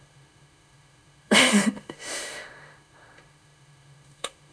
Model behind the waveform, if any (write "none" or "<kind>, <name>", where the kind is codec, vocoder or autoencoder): autoencoder, DAC-VAE